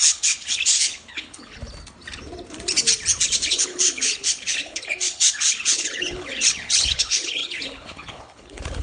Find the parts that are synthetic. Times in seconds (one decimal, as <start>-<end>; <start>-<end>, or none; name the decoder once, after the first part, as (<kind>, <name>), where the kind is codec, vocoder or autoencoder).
0.0-1.6 (codec, HILCodec); 3.5-8.8